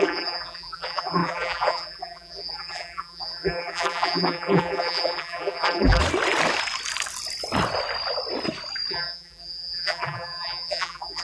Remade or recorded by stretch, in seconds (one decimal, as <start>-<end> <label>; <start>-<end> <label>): 0.0-6.0 remade; 6.0-8.9 recorded; 8.9-11.2 remade

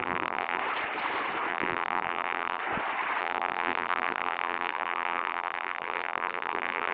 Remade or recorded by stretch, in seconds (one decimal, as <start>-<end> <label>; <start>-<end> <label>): 0.0-0.6 remade; 0.6-1.5 recorded; 1.5-2.6 remade; 2.6-3.2 recorded; 3.2-6.9 remade